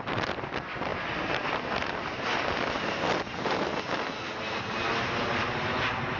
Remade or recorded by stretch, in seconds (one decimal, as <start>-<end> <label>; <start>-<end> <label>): 0.0-6.2 recorded